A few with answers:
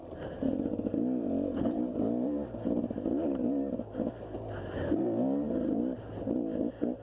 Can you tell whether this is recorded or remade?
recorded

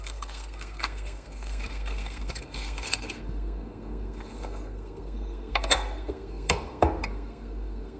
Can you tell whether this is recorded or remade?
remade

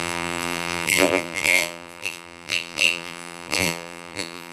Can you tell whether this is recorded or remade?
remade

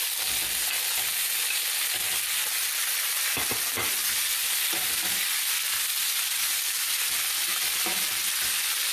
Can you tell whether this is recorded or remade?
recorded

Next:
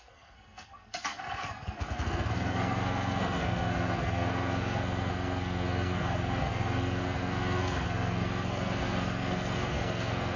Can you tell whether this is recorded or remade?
remade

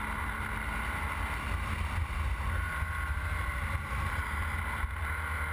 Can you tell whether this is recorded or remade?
recorded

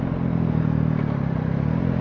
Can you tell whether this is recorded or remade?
recorded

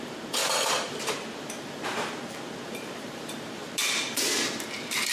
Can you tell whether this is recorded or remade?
remade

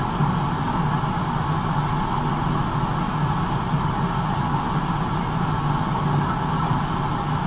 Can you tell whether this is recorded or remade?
recorded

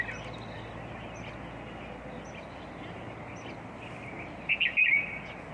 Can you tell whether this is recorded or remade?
recorded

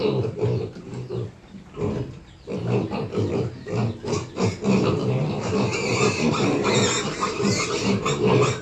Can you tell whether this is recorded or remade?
recorded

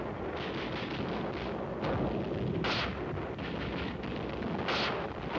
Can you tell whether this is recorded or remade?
recorded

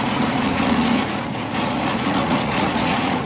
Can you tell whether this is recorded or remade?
remade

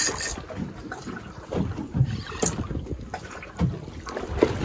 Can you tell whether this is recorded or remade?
recorded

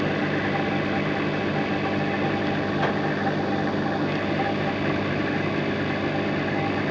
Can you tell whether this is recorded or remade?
recorded